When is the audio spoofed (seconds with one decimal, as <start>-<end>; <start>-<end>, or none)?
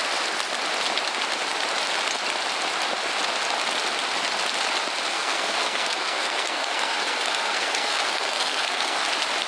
5.1-9.1